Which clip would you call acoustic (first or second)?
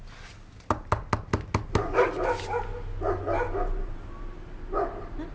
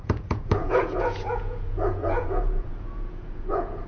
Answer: first